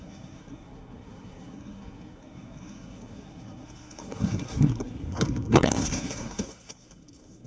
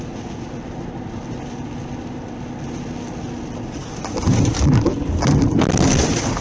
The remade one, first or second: first